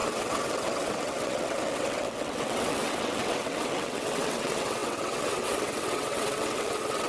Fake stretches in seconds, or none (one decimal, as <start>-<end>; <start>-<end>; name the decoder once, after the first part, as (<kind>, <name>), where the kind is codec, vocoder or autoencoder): 0.0-7.1 (vocoder, WaveNeXt)

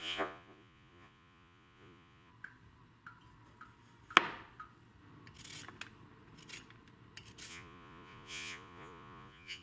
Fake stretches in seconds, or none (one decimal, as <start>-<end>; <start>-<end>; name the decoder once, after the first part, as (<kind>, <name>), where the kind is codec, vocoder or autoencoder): 0.0-2.3 (vocoder, Vocos); 7.5-9.6

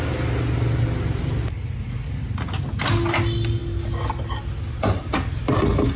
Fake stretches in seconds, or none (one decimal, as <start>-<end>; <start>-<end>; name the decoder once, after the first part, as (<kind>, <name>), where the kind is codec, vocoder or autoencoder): none

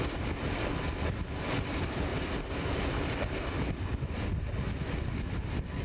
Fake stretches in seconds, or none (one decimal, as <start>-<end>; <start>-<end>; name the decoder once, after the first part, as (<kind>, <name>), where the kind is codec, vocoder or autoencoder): none

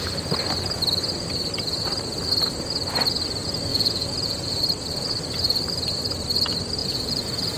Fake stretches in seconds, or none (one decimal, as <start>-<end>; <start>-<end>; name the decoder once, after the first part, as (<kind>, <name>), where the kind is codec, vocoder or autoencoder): 3.7-4.6 (vocoder, Vocos); 6.8-7.6